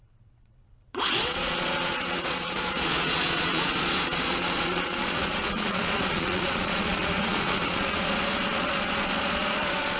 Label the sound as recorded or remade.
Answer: remade